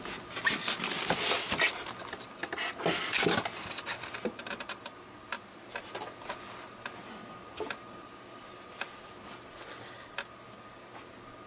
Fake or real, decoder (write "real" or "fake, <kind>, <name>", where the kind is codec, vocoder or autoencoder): real